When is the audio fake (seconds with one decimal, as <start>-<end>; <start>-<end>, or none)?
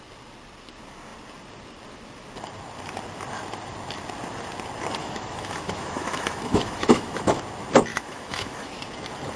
5.0-7.4; 7.9-8.8